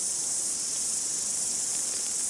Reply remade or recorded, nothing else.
remade